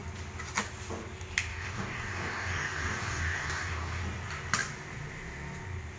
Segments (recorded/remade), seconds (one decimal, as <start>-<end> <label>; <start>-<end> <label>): 0.0-1.5 recorded; 1.5-4.0 remade; 4.0-6.0 recorded